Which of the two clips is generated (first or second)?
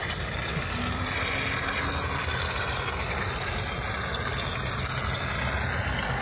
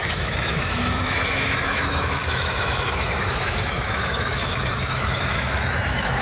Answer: second